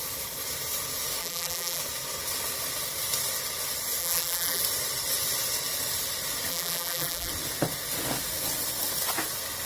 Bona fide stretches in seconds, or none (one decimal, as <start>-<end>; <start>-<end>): 0.0-1.2; 1.8-4.0; 4.6-6.5; 7.3-9.7